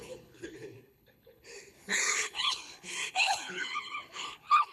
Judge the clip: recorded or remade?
remade